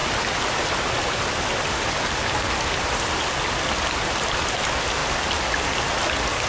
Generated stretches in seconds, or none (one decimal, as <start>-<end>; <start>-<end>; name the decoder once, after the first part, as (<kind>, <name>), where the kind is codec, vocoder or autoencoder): none